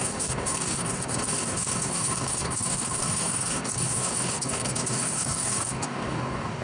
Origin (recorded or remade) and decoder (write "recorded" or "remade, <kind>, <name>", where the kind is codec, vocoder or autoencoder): remade, codec, DAC